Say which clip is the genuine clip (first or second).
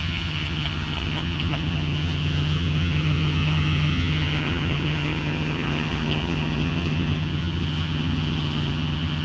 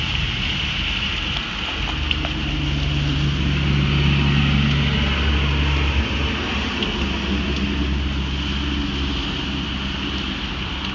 second